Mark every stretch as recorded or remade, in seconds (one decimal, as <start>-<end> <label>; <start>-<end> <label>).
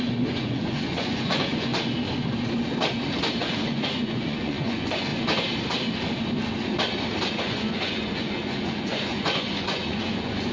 0.0-1.7 remade; 1.7-3.4 recorded; 3.4-5.1 remade; 5.1-7.3 recorded; 7.3-10.5 remade